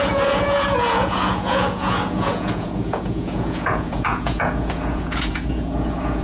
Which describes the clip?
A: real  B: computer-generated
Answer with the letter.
B